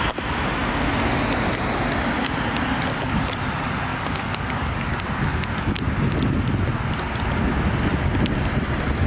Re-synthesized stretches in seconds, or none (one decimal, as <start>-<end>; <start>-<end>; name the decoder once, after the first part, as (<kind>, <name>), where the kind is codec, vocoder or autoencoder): 2.9-3.4 (codec, DAC); 3.9-4.8; 5.3-5.8